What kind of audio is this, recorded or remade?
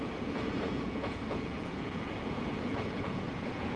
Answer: remade